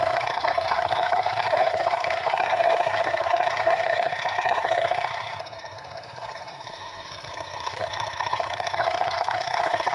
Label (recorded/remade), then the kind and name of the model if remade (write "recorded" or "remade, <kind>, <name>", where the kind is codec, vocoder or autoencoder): remade, codec, SNAC